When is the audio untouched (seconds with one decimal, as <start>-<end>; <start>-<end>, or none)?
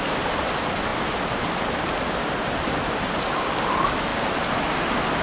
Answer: 0.0-5.2